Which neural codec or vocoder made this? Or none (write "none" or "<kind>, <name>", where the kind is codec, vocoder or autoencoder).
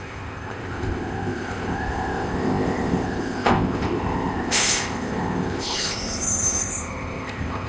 codec, ZipCodec